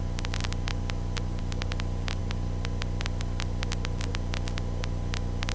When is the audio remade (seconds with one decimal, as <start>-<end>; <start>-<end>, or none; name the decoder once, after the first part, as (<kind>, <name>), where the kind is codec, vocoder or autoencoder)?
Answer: none